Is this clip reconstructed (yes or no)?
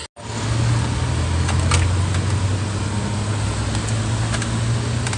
no